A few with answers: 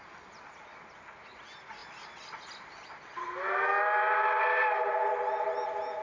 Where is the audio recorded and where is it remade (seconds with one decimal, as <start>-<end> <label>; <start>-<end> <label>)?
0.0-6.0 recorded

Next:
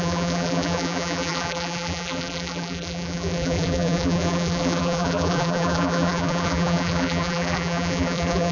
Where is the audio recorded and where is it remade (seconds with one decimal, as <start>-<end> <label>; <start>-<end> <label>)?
0.0-8.5 remade

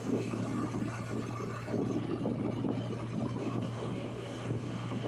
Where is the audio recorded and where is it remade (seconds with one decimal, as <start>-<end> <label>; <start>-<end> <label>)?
0.0-0.4 remade; 0.4-3.4 recorded; 3.4-5.1 remade

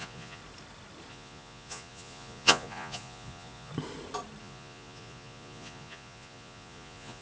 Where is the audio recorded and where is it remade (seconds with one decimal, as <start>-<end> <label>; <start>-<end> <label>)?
0.0-0.4 remade; 0.4-1.1 recorded; 1.1-3.7 remade; 3.7-4.4 recorded; 4.4-7.2 remade

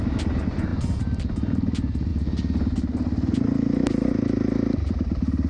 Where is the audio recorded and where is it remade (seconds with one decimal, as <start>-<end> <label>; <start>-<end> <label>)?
0.0-5.5 recorded

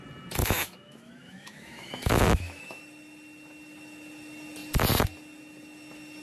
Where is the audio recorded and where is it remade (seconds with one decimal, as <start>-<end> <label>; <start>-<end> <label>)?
0.0-0.4 recorded; 0.4-2.8 remade; 2.8-6.2 recorded